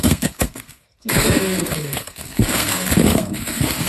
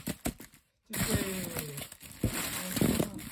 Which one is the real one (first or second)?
second